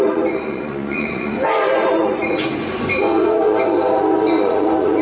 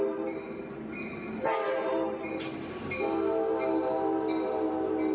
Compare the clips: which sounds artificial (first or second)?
first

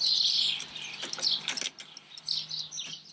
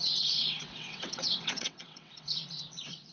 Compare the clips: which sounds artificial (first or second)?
second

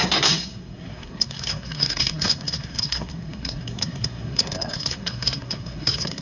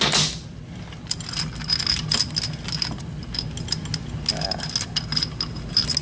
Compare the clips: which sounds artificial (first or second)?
first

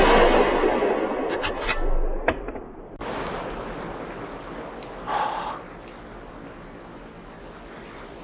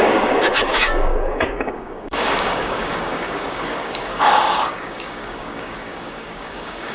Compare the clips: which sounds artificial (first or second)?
second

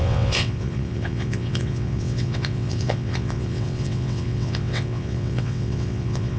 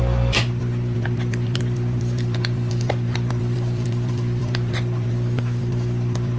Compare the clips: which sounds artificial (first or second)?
first